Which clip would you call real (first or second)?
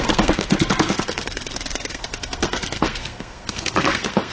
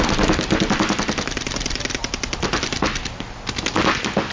second